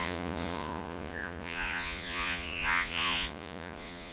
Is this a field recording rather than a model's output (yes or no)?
no